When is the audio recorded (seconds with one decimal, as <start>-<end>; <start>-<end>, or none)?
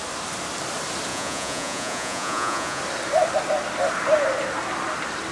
0.0-1.1; 2.8-5.3